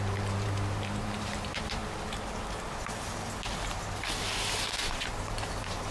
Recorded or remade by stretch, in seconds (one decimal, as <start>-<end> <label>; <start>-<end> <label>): 0.0-1.8 remade; 1.8-5.0 recorded; 5.0-5.9 remade

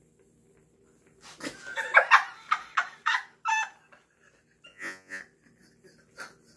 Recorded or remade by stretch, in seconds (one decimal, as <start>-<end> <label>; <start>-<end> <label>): 0.0-4.7 recorded; 4.7-5.2 remade; 5.2-6.6 recorded

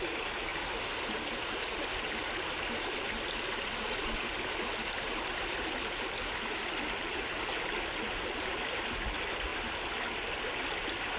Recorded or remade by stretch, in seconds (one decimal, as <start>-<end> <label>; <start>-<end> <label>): 0.0-0.5 recorded; 0.5-5.6 remade; 5.6-11.2 recorded